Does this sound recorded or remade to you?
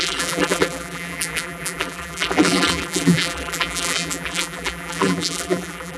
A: remade